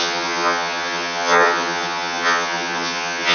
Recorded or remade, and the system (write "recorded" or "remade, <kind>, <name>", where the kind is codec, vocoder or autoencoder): remade, vocoder, HiFi-GAN